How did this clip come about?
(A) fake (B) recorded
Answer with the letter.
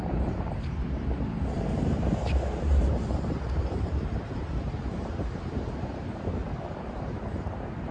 A